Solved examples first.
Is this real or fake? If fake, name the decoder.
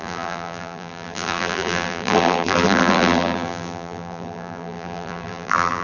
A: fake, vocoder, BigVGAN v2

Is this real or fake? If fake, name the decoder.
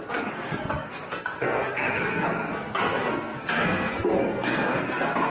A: fake, codec, SNAC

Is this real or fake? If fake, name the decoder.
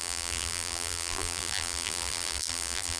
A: fake, vocoder, BigVGAN v2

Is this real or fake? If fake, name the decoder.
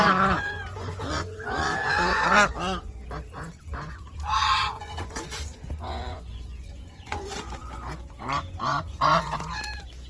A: fake, vocoder, Vocos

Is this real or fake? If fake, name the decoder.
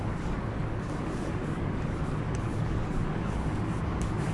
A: fake, codec, DAC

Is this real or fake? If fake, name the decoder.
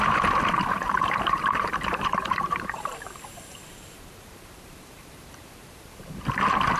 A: fake, vocoder, BigVGAN v2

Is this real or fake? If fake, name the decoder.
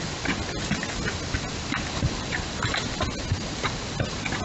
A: real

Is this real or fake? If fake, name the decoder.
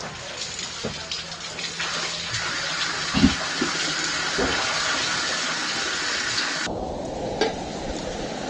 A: real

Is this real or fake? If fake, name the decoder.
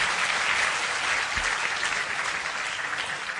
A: real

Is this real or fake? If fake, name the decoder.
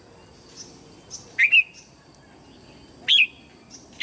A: real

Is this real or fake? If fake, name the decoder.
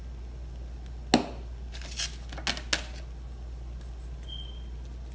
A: real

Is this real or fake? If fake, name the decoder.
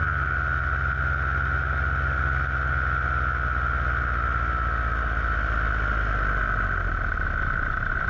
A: real